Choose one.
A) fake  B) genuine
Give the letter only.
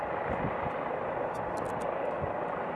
B